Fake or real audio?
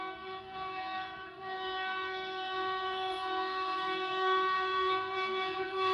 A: fake